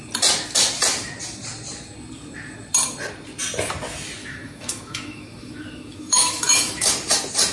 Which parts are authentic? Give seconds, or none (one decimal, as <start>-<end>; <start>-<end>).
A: 0.0-4.2; 6.9-7.5